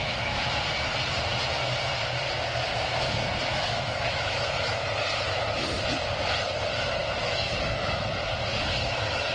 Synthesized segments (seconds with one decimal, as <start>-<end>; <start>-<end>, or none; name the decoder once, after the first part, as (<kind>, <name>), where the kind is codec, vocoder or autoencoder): 0.0-0.5 (autoencoder, DAC-VAE); 3.5-4.9; 7.0-8.1